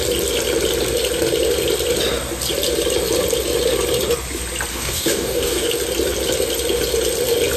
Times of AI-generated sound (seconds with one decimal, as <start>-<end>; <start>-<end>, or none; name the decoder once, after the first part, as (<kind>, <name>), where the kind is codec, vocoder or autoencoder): 4.7-5.7 (codec, DAC)